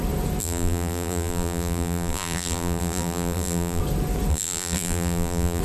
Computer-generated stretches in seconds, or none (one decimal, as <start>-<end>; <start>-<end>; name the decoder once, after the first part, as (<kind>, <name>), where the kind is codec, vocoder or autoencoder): 0.4-3.8 (vocoder, BigVGAN v2); 4.3-5.6